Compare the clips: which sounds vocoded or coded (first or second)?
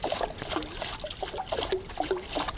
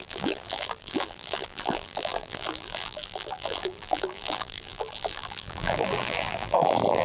second